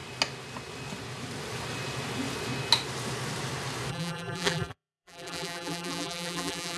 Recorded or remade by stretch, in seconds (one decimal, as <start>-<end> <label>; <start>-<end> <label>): 0.0-3.9 recorded; 3.9-6.8 remade